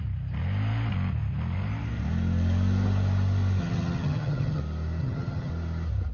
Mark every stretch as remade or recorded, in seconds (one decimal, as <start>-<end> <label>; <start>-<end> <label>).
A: 0.0-3.6 recorded; 3.6-4.6 remade; 4.6-5.0 recorded; 5.0-5.5 remade; 5.5-6.1 recorded